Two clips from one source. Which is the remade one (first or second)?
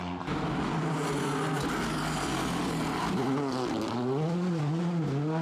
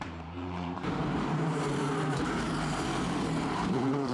second